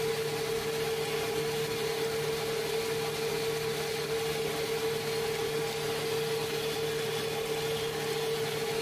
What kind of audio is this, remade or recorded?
recorded